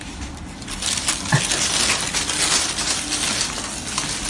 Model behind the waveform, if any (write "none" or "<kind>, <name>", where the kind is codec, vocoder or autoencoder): none